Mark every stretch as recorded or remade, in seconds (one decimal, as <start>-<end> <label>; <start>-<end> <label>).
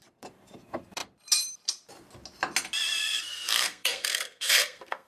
0.0-3.0 recorded; 3.0-5.1 remade